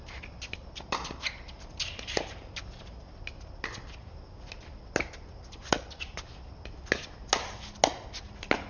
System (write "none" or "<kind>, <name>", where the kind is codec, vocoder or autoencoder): none